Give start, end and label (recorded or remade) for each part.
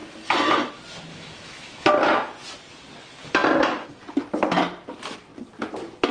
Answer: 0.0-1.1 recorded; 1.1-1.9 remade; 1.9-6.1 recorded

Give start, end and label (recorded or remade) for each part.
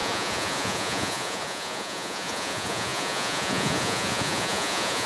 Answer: 0.0-5.1 remade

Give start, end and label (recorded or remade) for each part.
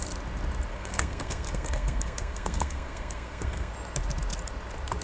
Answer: 0.0-0.7 recorded; 0.7-3.7 remade; 3.7-5.0 recorded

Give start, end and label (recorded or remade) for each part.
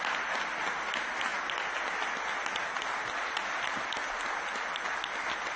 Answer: 0.0-5.6 recorded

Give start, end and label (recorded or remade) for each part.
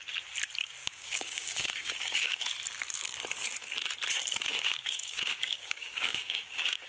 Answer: 0.0-0.8 recorded; 0.8-2.4 remade; 2.4-4.5 recorded; 4.5-6.9 remade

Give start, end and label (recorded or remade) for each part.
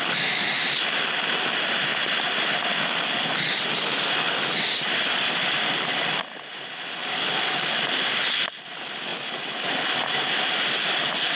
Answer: 0.0-7.0 recorded; 7.0-7.7 remade; 7.7-11.3 recorded